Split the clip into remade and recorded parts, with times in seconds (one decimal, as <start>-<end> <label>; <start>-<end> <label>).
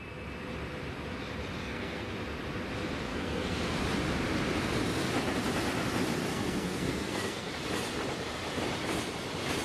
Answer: 0.0-1.6 recorded; 1.6-2.1 remade; 2.1-3.1 recorded; 3.1-3.8 remade; 3.8-6.3 recorded; 6.3-7.5 remade; 7.5-9.6 recorded